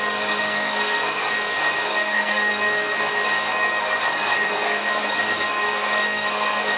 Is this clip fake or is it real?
fake